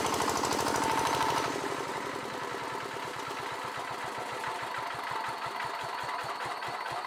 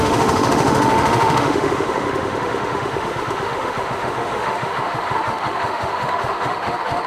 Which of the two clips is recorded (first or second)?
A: first